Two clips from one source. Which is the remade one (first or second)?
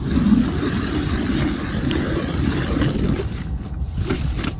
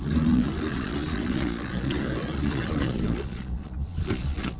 second